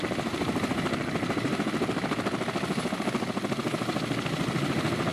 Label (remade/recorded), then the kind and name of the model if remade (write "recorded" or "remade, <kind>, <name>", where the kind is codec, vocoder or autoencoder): recorded